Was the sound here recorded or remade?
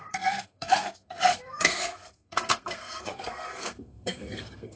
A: remade